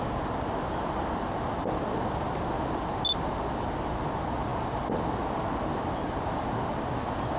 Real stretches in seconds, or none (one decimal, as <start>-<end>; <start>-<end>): 0.0-7.4